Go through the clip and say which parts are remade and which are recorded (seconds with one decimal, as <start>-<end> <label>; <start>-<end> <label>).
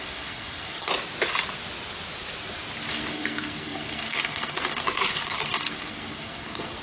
0.0-0.9 remade; 0.9-2.9 recorded; 2.9-6.8 remade